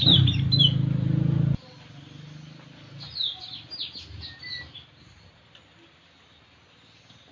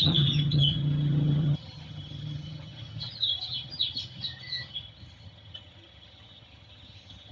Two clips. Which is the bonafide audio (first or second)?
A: first